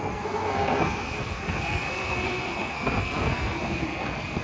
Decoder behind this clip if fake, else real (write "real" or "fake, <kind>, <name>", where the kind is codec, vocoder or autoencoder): fake, codec, SNAC